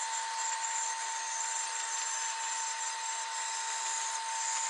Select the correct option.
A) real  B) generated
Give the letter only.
A